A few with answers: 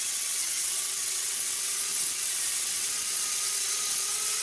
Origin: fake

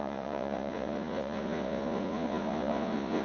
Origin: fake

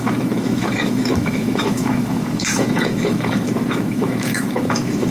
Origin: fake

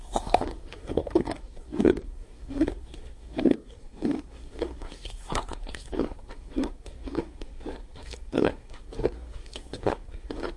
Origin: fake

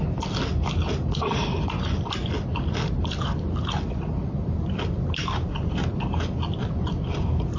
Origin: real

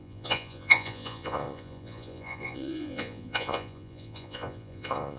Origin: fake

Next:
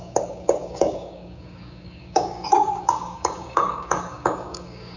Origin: fake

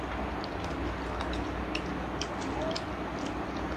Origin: real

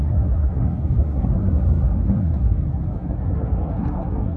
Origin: fake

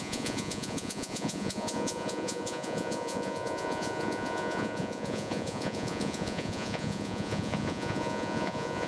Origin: fake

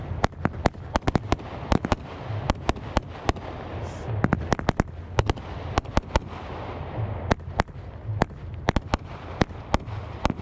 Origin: real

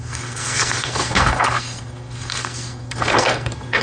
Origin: fake